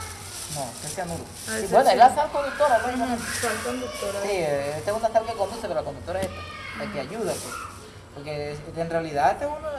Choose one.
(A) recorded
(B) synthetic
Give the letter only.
A